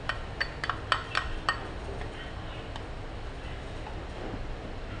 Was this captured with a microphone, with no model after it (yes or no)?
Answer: yes